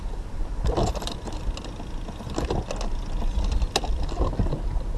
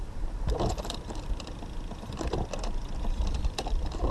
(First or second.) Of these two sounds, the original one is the first